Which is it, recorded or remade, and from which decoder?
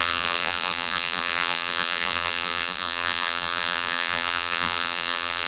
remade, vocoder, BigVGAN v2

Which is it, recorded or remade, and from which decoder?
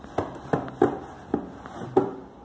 recorded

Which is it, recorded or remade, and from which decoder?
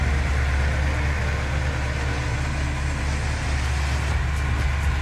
recorded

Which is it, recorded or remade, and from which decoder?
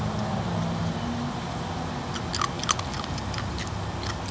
recorded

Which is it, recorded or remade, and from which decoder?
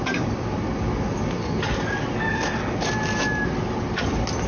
recorded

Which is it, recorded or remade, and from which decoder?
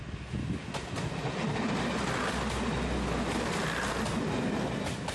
recorded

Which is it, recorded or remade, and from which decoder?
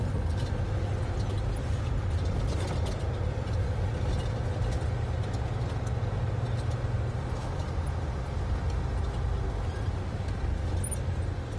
recorded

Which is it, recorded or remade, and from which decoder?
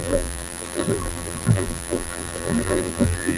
remade, vocoder, BigVGAN v2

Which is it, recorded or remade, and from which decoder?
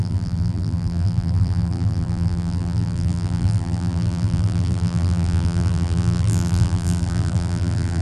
remade, vocoder, BigVGAN v2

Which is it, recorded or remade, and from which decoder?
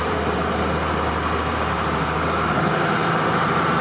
remade, vocoder, BigVGAN v2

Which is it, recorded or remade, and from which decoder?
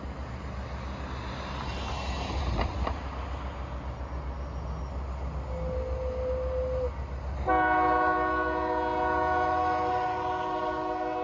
recorded